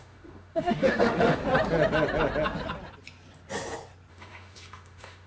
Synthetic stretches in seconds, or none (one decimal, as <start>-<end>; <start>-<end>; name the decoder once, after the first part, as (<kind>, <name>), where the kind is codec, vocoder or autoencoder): 0.0-1.4 (autoencoder, DAC-VAE); 4.1-5.3

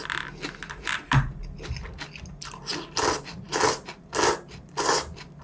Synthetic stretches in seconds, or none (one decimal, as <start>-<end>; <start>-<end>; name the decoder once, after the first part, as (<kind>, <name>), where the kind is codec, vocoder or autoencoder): none

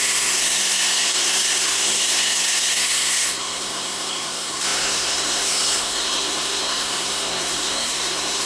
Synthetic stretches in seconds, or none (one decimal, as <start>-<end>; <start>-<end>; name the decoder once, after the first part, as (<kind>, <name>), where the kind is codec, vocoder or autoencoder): 0.0-8.5 (codec, SNAC)

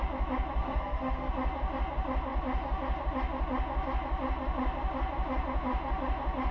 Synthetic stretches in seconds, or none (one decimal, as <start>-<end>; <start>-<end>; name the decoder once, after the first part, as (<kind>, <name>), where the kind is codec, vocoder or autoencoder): 0.6-1.3 (codec, SNAC)

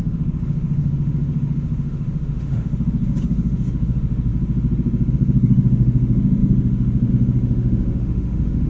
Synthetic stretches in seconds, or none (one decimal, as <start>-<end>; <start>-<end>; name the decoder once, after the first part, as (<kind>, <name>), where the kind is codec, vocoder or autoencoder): 0.0-4.3 (autoencoder, DAC-VAE); 5.1-8.7

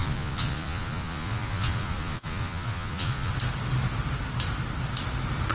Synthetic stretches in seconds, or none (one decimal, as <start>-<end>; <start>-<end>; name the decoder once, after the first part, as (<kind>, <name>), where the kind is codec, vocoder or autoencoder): 0.0-3.3 (vocoder, Vocos)